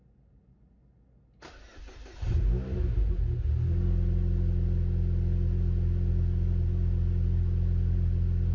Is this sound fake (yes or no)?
no